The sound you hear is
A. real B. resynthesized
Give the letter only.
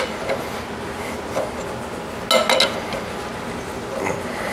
A